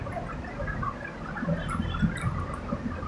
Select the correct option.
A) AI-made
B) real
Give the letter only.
B